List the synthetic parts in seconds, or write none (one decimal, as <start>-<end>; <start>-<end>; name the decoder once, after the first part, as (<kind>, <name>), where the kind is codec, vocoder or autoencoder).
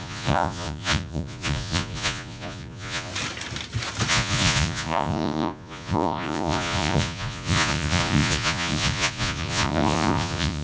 0.0-3.1 (vocoder, Vocos); 4.1-10.6